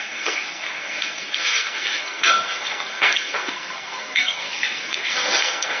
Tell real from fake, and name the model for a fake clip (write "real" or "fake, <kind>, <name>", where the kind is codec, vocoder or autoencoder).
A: fake, codec, SNAC